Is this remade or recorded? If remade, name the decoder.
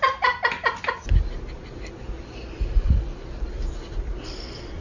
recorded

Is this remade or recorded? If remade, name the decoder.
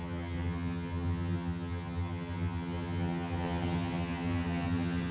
remade, vocoder, HiFi-GAN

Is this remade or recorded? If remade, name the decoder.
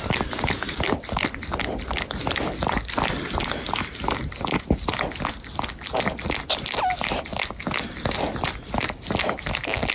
recorded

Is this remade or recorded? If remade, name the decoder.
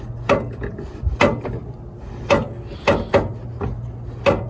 recorded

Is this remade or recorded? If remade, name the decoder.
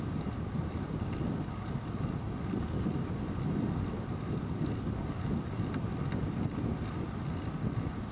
recorded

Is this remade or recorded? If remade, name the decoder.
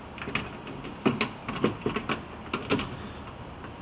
recorded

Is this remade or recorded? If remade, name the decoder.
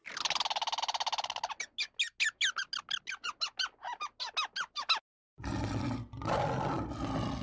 recorded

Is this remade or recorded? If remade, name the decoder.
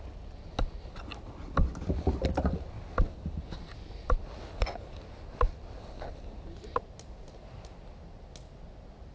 recorded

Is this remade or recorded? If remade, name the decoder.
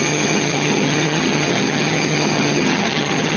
remade, vocoder, HiFi-GAN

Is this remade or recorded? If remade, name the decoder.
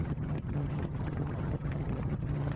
remade, vocoder, HiFi-GAN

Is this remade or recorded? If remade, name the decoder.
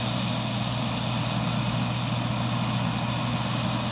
recorded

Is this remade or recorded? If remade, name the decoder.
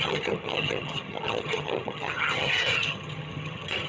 remade, vocoder, HiFi-GAN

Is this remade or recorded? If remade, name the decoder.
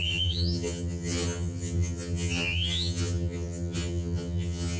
remade, vocoder, HiFi-GAN